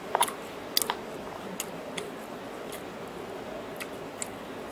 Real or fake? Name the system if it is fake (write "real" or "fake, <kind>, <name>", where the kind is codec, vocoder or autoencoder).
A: real